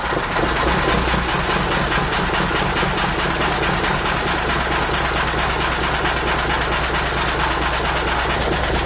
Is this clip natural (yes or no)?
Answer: yes